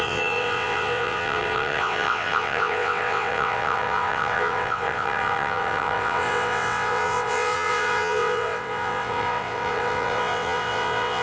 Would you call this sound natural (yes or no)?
no